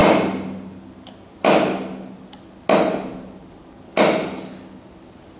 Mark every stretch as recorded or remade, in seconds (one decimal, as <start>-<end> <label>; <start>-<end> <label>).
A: 0.0-5.4 recorded